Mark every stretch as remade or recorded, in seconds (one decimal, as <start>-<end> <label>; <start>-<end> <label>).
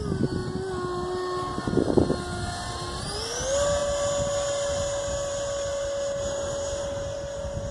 0.0-7.7 recorded